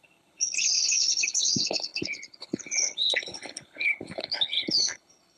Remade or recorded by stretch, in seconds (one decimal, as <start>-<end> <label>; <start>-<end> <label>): 0.0-5.4 remade

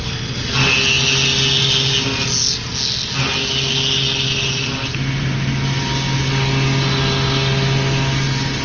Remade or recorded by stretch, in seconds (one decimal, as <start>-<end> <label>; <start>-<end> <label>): 0.0-8.6 recorded

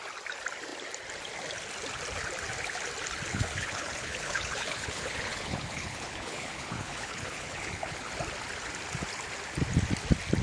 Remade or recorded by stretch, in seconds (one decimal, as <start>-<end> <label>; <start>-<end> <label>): 0.0-3.3 recorded; 3.3-8.1 remade; 8.1-10.4 recorded

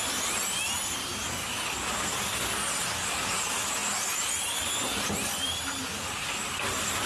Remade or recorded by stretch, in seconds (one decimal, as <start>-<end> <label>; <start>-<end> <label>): 0.0-7.1 recorded

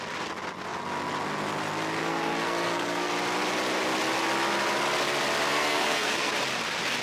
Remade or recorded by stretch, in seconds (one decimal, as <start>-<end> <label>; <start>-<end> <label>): 0.0-2.0 recorded; 2.0-3.1 remade; 3.1-5.5 recorded; 5.5-6.3 remade; 6.3-7.0 recorded

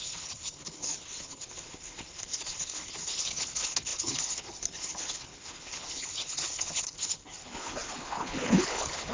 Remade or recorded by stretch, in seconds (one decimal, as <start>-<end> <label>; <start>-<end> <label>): 0.0-9.1 remade

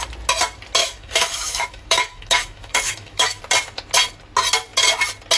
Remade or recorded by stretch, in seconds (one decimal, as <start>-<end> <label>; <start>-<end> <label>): 0.0-0.8 recorded; 0.8-3.4 remade; 3.4-5.4 recorded

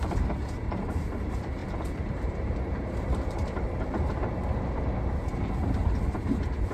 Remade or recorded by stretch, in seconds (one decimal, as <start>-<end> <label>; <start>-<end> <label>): 0.0-4.2 remade; 4.2-5.1 recorded; 5.1-6.7 remade